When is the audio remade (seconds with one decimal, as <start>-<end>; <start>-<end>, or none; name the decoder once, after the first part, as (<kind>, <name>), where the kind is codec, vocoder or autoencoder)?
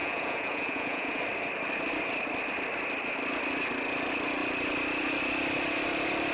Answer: 0.0-1.2 (vocoder, Vocos)